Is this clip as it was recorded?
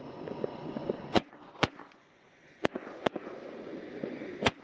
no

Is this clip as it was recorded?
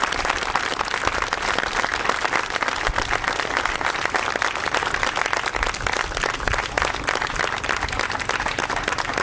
yes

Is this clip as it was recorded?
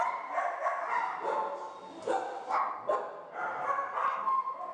yes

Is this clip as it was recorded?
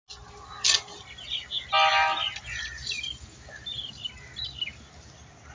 yes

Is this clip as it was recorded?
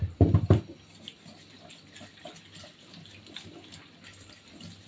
yes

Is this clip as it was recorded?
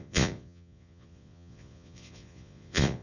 no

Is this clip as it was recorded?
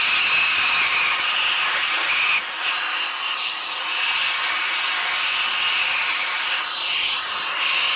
yes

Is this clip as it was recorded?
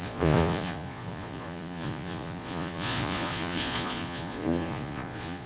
no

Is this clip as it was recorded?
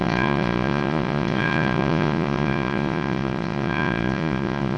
no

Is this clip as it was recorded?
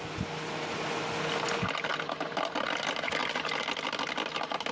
yes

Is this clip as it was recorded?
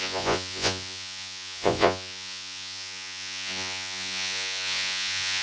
no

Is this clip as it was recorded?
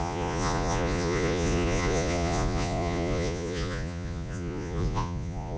no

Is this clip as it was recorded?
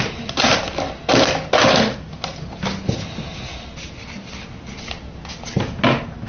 yes